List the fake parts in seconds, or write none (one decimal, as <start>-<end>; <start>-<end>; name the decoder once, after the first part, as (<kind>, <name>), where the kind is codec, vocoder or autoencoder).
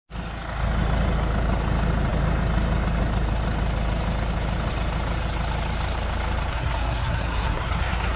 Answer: 6.5-8.2 (codec, SNAC)